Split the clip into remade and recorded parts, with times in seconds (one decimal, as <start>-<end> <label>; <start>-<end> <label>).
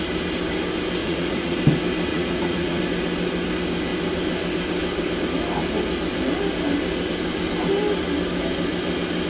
0.0-1.0 recorded; 1.0-1.6 remade; 1.6-2.1 recorded; 2.1-2.8 remade; 2.8-9.3 recorded